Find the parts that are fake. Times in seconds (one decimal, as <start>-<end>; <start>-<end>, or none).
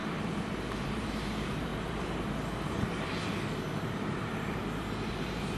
0.0-1.7; 3.9-4.6; 5.1-5.6